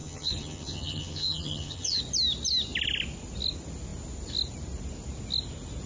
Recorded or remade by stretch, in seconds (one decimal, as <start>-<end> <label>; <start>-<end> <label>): 0.0-2.0 remade; 2.0-5.9 recorded